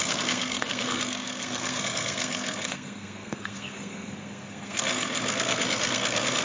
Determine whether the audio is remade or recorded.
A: remade